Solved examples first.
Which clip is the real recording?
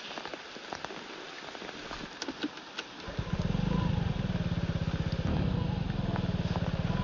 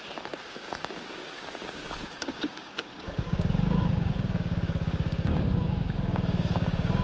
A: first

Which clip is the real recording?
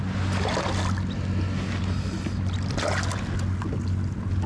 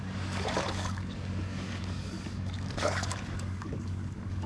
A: first